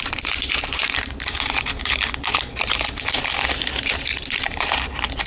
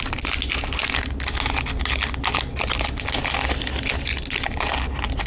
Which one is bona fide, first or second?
second